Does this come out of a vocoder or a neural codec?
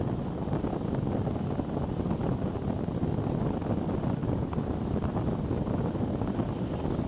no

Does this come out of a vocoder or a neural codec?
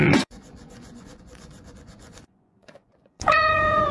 yes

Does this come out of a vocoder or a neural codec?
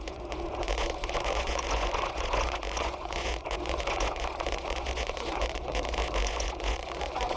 yes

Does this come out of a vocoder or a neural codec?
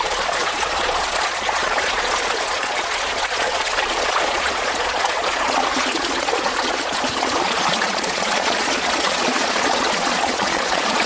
yes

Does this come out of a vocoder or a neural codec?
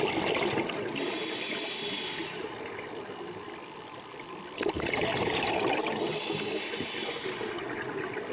no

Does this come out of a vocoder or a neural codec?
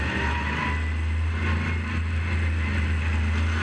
no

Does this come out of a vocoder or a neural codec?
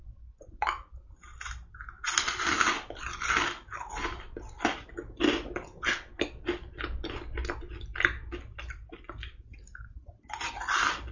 no